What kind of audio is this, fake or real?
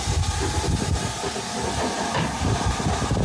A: real